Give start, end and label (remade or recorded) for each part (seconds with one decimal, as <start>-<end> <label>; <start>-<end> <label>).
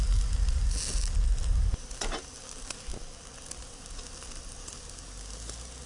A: 0.0-5.9 recorded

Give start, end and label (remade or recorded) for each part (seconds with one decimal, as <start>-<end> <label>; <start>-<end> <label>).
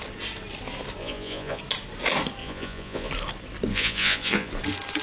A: 0.0-1.0 recorded; 1.0-1.6 remade; 1.6-2.4 recorded; 2.4-3.1 remade; 3.1-3.7 recorded; 3.7-4.5 remade; 4.5-5.0 recorded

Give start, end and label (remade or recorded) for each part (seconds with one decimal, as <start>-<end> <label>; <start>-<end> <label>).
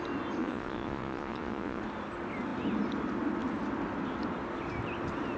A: 0.0-0.4 recorded; 0.4-1.8 remade; 1.8-5.4 recorded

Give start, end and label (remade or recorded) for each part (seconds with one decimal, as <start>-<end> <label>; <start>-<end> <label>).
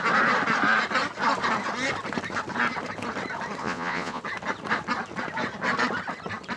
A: 0.0-3.6 recorded; 3.6-4.2 remade; 4.2-6.6 recorded